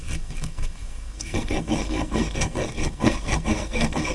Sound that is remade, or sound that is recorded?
remade